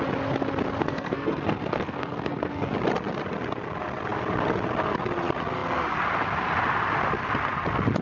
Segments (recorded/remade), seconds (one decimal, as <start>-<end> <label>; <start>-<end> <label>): 0.0-0.8 recorded; 0.8-2.7 remade; 2.7-8.0 recorded